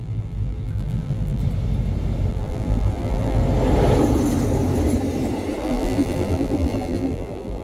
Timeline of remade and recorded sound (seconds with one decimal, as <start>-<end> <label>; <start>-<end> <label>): 0.0-1.4 remade; 1.4-2.3 recorded; 2.3-3.4 remade; 3.4-5.6 recorded; 5.6-7.6 remade